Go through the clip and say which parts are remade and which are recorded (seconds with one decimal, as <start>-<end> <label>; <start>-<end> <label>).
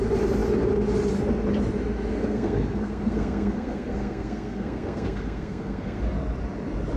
0.0-2.1 recorded; 2.1-6.0 remade; 6.0-7.0 recorded